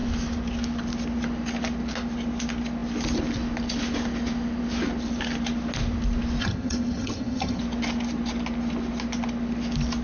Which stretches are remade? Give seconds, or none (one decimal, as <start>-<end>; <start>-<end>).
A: 6.4-7.6

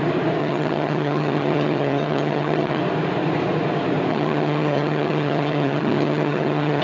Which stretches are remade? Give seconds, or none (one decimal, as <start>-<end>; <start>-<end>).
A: 0.4-2.8; 4.1-6.8

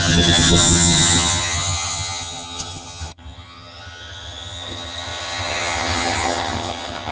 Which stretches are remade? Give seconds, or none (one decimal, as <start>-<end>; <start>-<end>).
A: 0.0-7.1

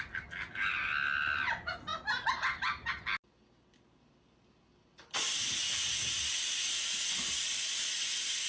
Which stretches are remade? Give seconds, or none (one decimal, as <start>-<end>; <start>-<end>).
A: none